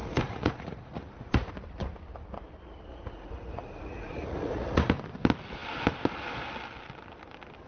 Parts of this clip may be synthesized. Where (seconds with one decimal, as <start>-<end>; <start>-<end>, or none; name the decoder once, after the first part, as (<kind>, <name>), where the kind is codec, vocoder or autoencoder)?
0.0-1.5 (vocoder, Vocos); 2.9-4.9